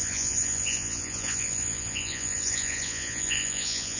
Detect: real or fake fake